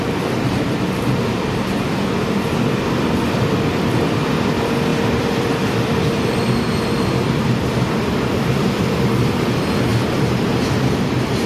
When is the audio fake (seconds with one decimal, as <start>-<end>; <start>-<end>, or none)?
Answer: 0.0-9.9; 10.6-11.5